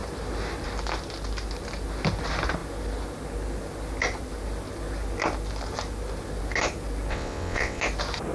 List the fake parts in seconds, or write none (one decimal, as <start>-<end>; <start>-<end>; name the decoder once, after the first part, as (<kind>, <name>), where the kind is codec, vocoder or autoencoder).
7.1-7.8 (vocoder, WaveNeXt)